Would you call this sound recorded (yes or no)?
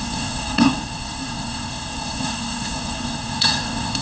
no